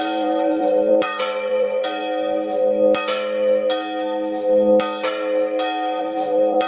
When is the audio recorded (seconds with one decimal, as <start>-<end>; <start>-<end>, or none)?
2.0-6.0